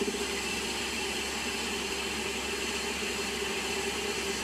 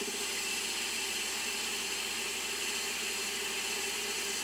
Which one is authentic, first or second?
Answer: second